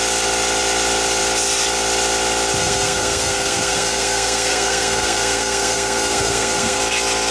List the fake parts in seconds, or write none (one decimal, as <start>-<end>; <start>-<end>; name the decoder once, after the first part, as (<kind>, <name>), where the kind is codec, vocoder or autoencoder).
2.6-6.8 (codec, SNAC)